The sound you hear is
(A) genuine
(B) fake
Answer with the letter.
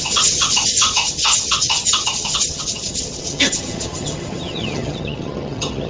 B